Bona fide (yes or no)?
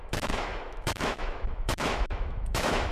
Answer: no